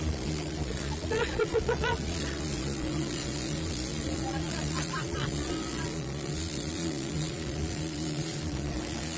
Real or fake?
fake